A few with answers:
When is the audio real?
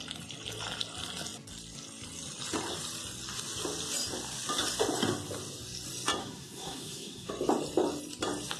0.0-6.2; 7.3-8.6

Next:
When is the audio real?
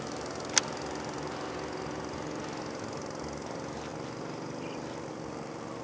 0.0-5.8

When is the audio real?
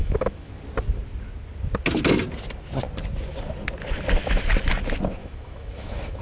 0.5-5.2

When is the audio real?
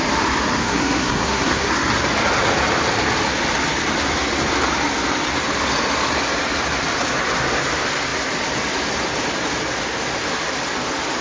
0.0-0.6; 1.7-11.2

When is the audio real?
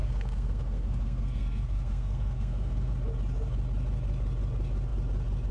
2.9-5.5